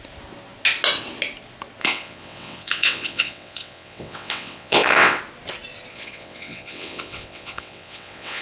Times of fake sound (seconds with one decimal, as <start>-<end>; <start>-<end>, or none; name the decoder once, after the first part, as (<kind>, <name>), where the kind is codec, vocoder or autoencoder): 1.8-5.2 (vocoder, WaveNeXt); 5.9-8.4